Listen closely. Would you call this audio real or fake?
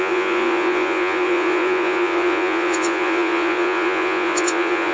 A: fake